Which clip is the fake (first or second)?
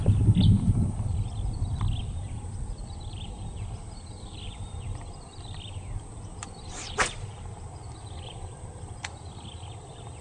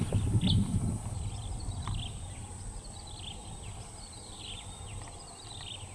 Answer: first